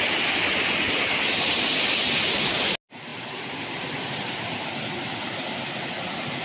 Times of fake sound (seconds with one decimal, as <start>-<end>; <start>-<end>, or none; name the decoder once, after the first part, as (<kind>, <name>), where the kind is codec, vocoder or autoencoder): 3.1-5.8 (vocoder, BigVGAN v2)